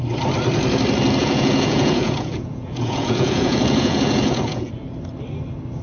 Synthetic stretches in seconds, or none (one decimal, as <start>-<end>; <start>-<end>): 1.2-4.7